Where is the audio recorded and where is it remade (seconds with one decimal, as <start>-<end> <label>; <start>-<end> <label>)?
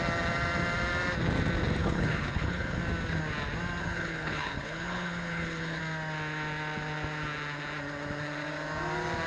0.0-1.8 recorded; 1.8-2.8 remade; 2.8-3.8 recorded; 3.8-5.8 remade; 5.8-9.3 recorded